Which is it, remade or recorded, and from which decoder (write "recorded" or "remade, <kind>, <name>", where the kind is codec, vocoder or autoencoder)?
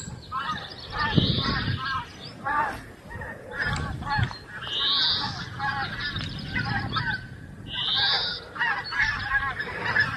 recorded